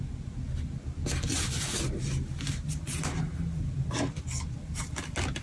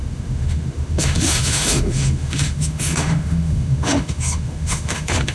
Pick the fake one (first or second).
second